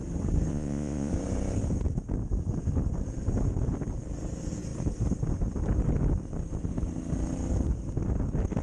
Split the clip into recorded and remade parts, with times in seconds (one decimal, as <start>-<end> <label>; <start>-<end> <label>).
0.0-0.5 recorded; 0.5-1.1 remade; 1.1-8.6 recorded